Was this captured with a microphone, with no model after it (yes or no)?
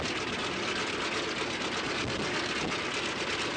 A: yes